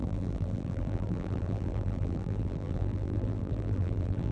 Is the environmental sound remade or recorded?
remade